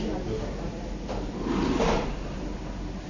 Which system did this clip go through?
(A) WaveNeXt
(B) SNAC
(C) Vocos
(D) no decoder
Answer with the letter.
D